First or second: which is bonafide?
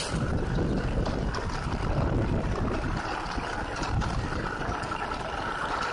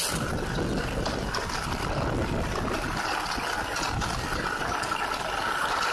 second